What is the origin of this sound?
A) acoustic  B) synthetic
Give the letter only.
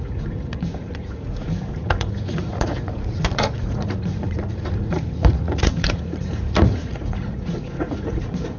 B